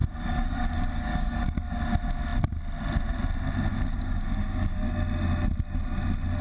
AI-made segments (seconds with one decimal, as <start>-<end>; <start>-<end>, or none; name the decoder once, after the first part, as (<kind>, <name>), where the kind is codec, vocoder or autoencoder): 0.0-1.8 (codec, DAC); 3.7-4.9